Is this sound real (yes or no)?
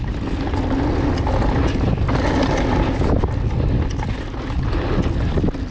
yes